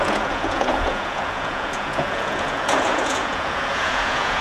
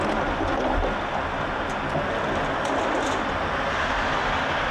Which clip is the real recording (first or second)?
second